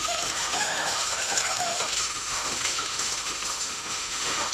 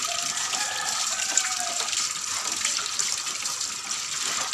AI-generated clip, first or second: first